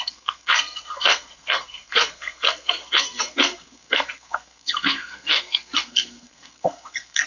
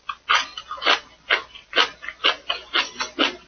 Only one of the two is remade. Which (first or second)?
first